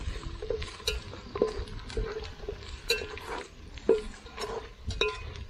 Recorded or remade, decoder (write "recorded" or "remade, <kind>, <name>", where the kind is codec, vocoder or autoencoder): recorded